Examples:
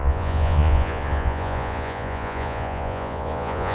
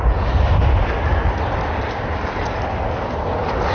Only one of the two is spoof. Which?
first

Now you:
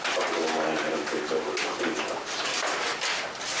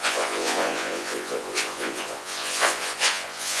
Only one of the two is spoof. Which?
second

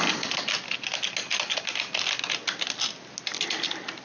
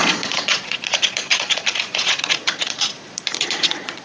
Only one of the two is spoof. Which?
second